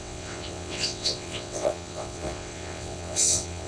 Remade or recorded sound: remade